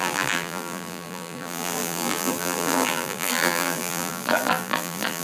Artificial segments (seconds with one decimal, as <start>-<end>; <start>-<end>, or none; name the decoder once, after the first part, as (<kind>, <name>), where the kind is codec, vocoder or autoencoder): 0.0-5.2 (vocoder, BigVGAN v2)